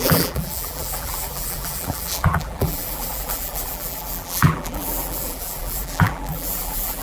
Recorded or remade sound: remade